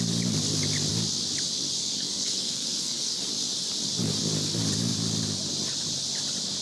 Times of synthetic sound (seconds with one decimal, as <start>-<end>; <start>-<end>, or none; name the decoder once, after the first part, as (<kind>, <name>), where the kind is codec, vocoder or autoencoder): 1.8-3.3 (codec, SNAC)